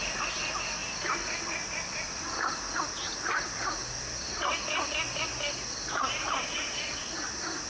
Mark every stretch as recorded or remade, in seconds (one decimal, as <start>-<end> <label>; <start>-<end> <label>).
0.0-7.7 recorded